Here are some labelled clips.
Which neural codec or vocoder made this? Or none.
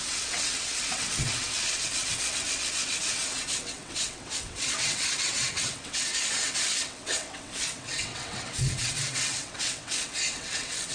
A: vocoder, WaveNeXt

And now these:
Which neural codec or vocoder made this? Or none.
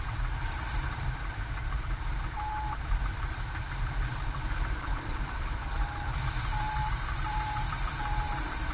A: vocoder, BigVGAN v2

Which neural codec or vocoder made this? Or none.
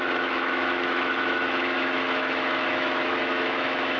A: autoencoder, DAC-VAE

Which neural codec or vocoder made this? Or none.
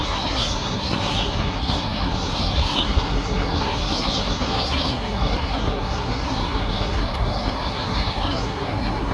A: codec, SNAC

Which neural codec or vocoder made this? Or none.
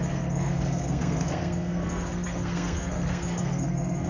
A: codec, SNAC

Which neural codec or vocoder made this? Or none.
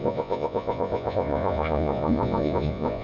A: vocoder, Vocos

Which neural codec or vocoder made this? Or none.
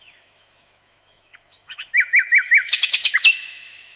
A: autoencoder, DAC-VAE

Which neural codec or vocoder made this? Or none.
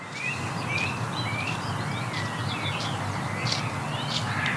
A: none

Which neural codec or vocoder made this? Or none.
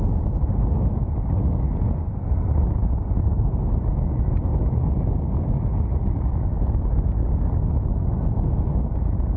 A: none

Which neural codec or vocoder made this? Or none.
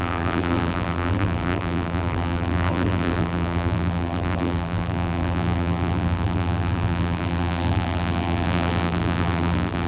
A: vocoder, BigVGAN v2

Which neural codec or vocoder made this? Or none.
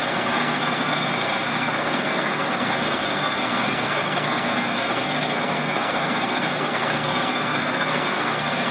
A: codec, SNAC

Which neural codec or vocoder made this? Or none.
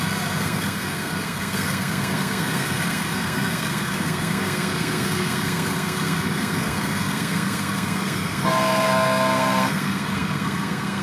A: codec, SNAC